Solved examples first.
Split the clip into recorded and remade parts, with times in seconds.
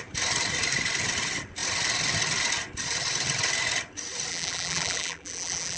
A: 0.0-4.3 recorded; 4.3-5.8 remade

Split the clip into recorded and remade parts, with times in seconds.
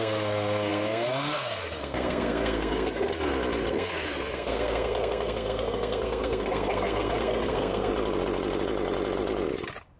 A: 0.0-3.1 remade; 3.1-3.6 recorded; 3.6-7.9 remade; 7.9-10.0 recorded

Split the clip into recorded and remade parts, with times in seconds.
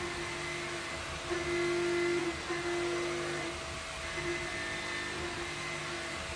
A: 0.0-6.4 recorded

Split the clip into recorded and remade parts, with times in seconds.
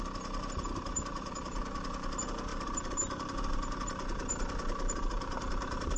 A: 0.0-1.1 recorded; 1.1-2.1 remade; 2.1-2.5 recorded; 2.5-6.0 remade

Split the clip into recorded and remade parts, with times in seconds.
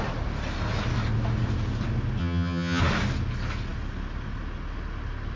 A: 0.0-2.2 recorded; 2.2-2.8 remade; 2.8-5.4 recorded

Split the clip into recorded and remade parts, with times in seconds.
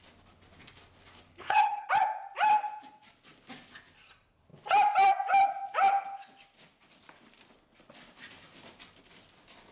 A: 0.0-1.3 recorded; 1.3-1.9 remade; 1.9-9.7 recorded